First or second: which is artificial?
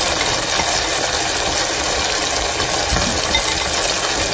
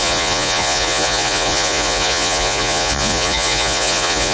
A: second